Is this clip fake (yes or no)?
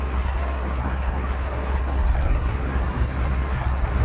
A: yes